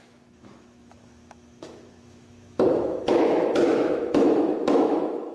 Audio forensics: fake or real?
fake